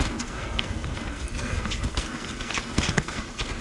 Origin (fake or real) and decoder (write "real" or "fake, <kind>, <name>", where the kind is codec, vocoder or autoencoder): fake, codec, SNAC